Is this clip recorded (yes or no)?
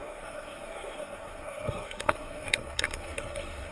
no